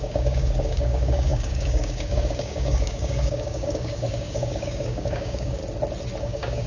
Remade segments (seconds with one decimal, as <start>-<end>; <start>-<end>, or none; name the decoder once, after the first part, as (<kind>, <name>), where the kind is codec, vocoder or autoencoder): 0.0-5.6 (codec, DAC); 6.2-6.7